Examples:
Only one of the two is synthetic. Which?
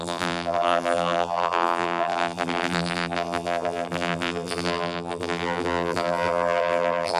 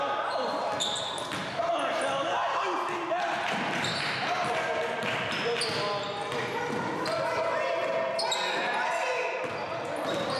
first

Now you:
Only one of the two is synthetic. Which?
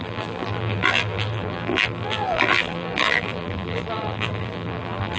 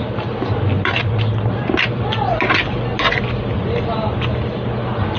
first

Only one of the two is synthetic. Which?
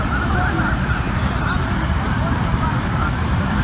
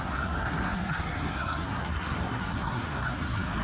second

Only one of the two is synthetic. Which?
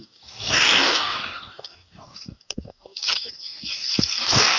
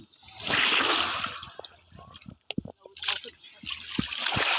first